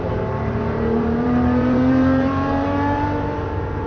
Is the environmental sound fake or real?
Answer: fake